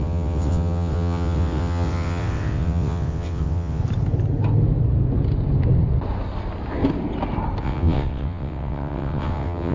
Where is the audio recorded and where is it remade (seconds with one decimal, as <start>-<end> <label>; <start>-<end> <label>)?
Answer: 0.0-3.8 remade; 3.8-7.6 recorded; 7.6-9.7 remade